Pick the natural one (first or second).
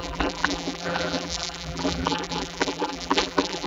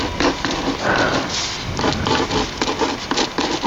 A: second